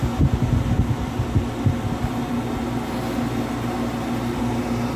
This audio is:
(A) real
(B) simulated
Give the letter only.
A